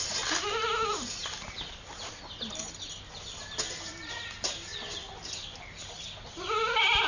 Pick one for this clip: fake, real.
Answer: real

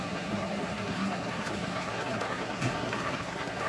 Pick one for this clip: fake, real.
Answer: fake